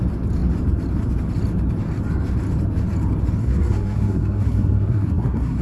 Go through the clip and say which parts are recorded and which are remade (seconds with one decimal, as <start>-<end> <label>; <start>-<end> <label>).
0.0-3.4 recorded; 3.4-5.6 remade